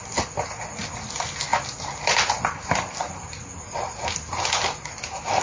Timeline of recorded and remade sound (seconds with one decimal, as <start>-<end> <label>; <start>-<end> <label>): 0.0-5.4 recorded